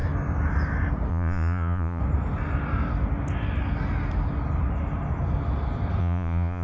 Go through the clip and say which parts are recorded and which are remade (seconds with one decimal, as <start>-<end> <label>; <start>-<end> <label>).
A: 0.0-1.1 recorded; 1.1-2.0 remade; 2.0-6.0 recorded; 6.0-6.6 remade